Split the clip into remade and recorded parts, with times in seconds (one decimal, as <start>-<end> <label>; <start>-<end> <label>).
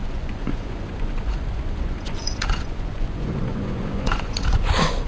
0.0-5.1 remade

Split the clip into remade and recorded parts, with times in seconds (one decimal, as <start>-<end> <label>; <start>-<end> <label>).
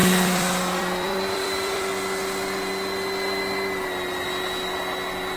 0.0-1.9 remade; 1.9-5.4 recorded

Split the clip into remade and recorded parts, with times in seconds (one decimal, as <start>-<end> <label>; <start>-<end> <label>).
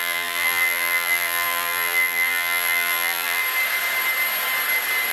0.0-3.4 remade; 3.4-5.1 recorded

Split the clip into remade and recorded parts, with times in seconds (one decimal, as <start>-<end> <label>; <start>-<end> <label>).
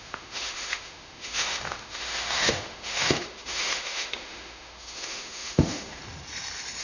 0.0-6.0 remade; 6.0-6.8 recorded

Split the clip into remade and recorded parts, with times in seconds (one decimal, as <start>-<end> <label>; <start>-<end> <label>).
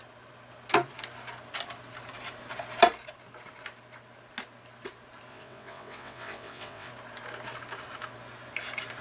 0.0-5.3 recorded; 5.3-6.9 remade; 6.9-9.0 recorded